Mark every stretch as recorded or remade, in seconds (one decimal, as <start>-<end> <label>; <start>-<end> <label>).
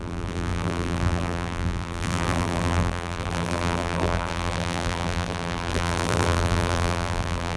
0.0-7.6 remade